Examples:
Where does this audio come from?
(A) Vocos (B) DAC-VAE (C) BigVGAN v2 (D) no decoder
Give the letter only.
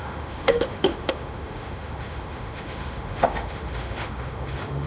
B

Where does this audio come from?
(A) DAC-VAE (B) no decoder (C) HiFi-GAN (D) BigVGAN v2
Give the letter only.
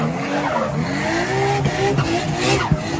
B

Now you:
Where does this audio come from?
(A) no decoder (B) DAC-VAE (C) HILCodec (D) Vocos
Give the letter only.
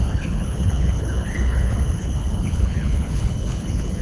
C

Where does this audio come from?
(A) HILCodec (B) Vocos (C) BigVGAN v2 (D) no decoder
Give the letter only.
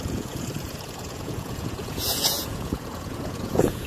B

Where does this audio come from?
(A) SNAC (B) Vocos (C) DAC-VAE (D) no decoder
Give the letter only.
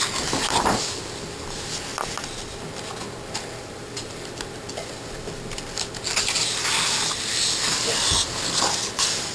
D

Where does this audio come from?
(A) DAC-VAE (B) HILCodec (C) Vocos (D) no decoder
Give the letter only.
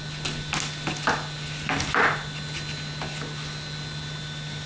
D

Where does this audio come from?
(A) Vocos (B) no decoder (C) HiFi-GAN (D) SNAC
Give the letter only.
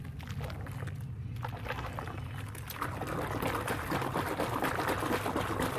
B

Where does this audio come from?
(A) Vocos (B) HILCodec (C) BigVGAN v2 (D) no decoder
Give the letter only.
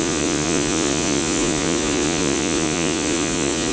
A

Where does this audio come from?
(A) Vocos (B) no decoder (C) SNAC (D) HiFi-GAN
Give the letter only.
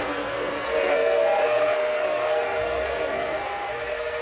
C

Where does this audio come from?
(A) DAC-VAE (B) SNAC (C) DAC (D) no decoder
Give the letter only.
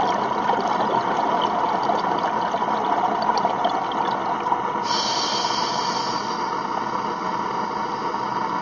D